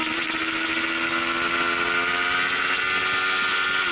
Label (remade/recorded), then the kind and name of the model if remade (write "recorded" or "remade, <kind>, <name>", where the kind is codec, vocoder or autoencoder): recorded